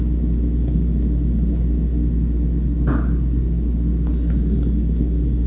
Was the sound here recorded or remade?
recorded